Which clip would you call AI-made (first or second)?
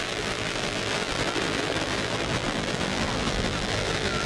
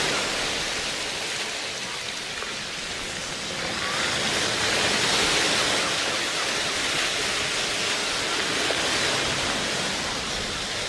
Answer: first